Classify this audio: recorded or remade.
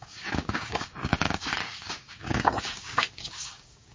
remade